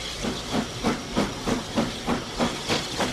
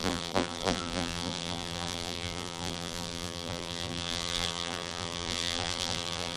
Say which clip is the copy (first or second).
second